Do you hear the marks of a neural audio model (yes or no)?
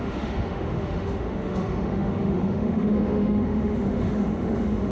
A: yes